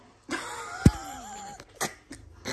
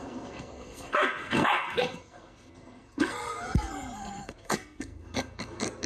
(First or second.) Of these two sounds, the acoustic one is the first